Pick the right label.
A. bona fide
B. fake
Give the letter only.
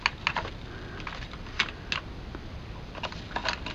A